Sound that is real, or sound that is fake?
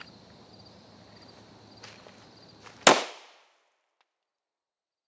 real